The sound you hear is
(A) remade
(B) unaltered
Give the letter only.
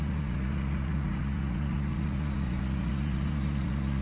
A